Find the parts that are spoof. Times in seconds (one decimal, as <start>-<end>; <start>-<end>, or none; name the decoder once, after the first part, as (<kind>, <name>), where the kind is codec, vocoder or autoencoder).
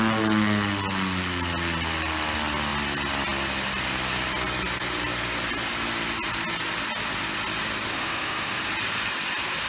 7.9-8.6 (autoencoder, DAC-VAE)